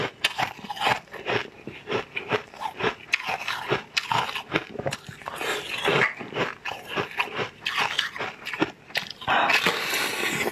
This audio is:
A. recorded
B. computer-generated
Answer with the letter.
A